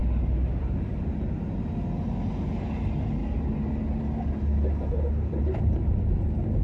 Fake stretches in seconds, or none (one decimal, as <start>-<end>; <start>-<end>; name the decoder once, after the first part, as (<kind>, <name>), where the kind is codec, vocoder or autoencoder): none